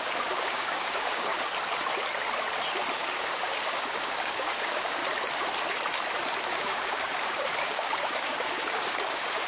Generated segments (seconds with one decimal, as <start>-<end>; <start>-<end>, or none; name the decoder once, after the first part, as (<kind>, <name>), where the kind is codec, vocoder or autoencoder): 0.0-1.3 (codec, DAC); 3.0-5.0; 6.4-9.5